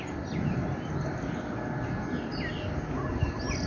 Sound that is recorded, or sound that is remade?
recorded